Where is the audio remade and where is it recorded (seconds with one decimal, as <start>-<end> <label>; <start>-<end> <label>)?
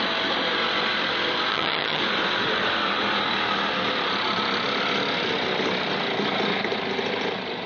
0.0-1.5 recorded; 1.5-2.0 remade; 2.0-7.7 recorded